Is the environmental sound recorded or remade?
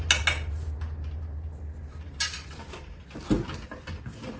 recorded